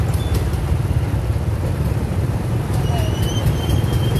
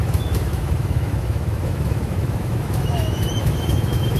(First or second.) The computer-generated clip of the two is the second